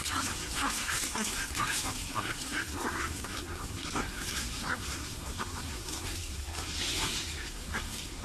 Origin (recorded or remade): remade